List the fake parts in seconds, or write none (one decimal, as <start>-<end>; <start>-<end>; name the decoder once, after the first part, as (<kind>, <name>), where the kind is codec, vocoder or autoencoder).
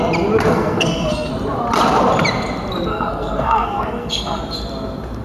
0.5-1.3 (codec, SNAC); 2.9-4.4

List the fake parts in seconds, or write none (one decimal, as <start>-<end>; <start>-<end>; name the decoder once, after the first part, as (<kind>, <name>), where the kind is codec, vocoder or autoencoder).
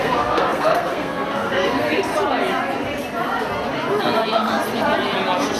0.0-2.1 (codec, SNAC); 4.0-4.5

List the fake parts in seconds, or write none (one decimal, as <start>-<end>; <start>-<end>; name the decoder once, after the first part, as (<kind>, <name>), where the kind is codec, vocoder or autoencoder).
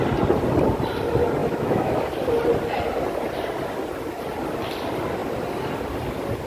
1.4-2.0 (autoencoder, DAC-VAE)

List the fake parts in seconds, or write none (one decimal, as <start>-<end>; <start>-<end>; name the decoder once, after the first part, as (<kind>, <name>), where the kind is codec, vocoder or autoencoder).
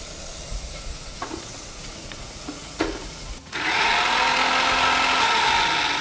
0.5-3.9 (vocoder, Vocos)